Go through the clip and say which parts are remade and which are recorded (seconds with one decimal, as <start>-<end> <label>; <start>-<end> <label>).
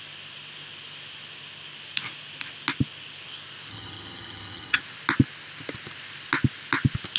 0.0-3.7 recorded; 3.7-4.8 remade; 4.8-7.2 recorded